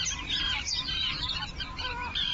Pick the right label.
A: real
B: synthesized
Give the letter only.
B